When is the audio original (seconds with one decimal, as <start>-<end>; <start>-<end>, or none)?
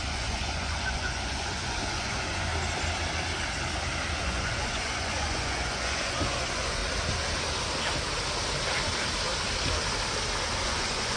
2.5-4.2; 6.8-10.6